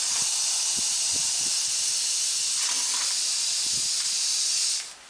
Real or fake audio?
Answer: real